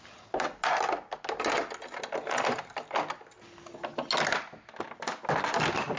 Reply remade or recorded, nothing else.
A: recorded